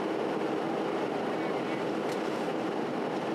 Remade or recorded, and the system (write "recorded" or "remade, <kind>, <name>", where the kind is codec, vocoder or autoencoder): recorded